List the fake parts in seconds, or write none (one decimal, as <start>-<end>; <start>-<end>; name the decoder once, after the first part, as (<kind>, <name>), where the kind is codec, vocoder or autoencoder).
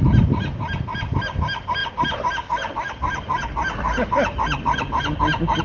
none